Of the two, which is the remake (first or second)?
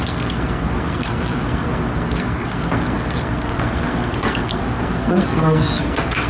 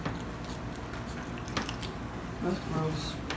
first